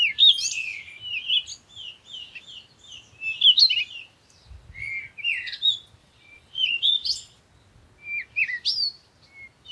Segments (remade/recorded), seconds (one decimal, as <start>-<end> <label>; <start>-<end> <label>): 0.0-6.0 recorded; 6.0-7.4 remade; 7.4-9.7 recorded